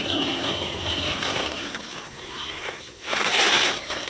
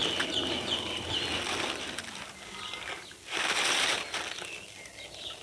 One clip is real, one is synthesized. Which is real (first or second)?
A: second